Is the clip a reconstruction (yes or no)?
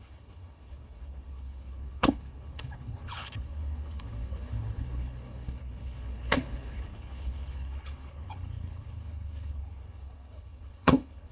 yes